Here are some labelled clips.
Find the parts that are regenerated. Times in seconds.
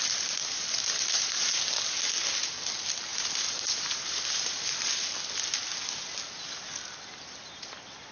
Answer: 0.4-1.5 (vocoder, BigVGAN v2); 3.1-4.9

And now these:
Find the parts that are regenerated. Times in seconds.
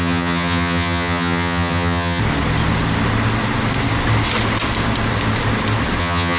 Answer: 0.0-2.2 (vocoder, HiFi-GAN); 6.0-6.4